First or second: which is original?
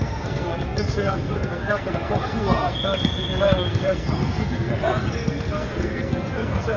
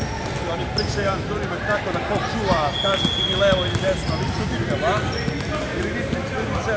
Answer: second